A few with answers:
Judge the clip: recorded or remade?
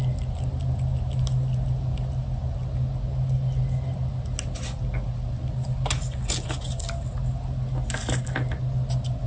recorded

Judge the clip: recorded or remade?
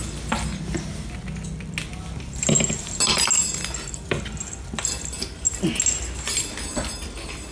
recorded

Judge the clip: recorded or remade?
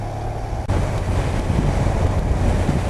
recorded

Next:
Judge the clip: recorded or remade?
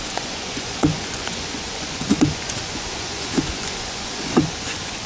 remade